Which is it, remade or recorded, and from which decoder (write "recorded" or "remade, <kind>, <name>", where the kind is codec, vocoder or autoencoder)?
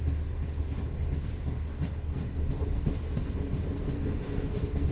remade, codec, SNAC